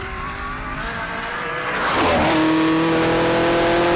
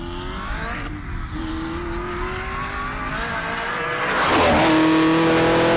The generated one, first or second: first